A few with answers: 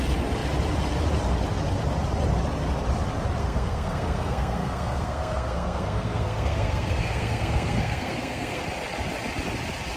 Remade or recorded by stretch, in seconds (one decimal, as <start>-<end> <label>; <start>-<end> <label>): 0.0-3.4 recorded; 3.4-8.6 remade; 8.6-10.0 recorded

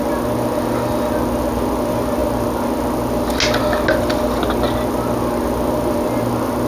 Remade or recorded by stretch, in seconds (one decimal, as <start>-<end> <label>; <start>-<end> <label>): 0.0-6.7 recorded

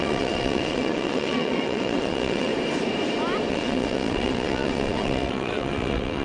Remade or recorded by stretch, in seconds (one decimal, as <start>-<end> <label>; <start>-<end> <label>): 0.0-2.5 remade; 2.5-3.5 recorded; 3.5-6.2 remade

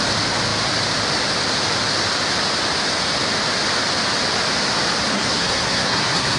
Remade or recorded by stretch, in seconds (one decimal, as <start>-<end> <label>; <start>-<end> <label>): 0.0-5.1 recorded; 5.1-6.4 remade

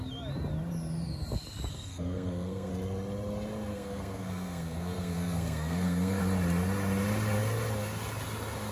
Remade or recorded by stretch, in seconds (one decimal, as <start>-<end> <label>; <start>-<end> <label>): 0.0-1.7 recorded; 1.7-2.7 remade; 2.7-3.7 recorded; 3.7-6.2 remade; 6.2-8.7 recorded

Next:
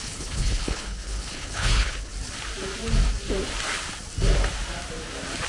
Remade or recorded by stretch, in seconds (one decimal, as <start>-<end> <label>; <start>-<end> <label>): 0.0-2.1 remade; 2.1-5.5 recorded

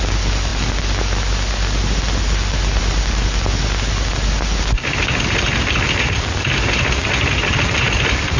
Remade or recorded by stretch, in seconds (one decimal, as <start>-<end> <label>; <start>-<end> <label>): 0.0-8.4 recorded

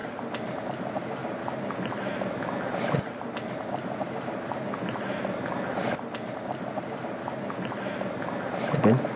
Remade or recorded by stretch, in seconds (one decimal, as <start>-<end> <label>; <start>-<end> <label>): 0.0-9.2 recorded